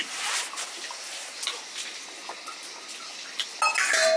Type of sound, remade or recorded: recorded